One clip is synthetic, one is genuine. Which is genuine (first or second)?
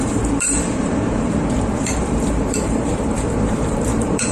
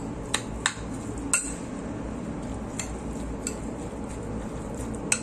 second